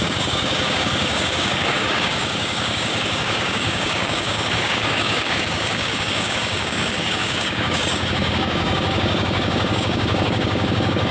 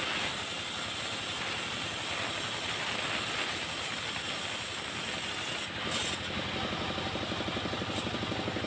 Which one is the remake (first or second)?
first